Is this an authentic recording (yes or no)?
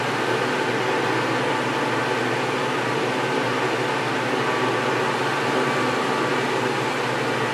yes